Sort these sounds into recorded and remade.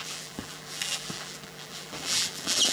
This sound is remade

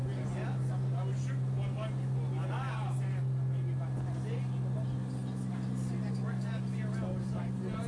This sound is recorded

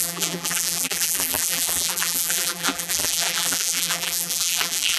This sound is remade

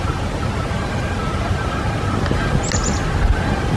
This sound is recorded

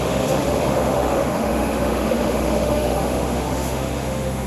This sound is remade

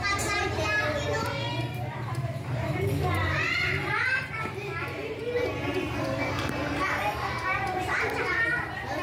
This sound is remade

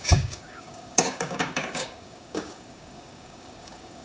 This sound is remade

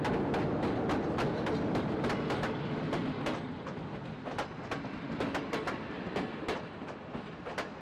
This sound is recorded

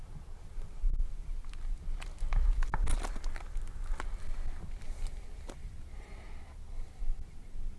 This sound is recorded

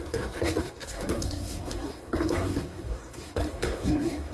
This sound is remade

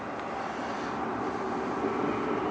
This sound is recorded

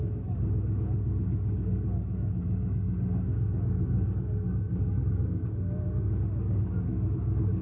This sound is remade